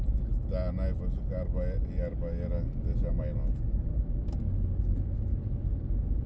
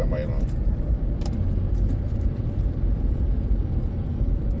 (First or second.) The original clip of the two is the first